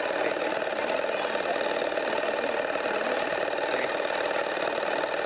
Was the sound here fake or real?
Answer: real